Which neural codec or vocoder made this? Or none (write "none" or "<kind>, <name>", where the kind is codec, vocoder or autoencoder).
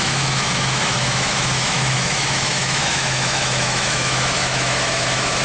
autoencoder, DAC-VAE